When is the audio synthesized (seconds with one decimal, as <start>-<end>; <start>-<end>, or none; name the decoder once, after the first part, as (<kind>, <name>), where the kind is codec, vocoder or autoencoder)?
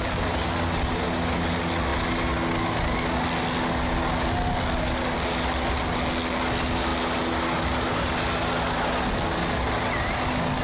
none